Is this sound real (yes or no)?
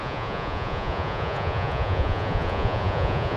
no